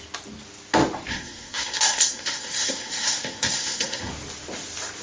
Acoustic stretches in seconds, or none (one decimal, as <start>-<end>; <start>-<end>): 0.0-1.1; 4.1-5.0